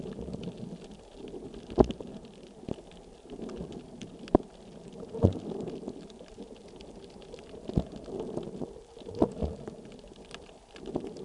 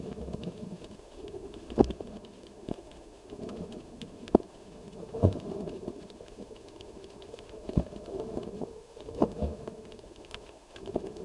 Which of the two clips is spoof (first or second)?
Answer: second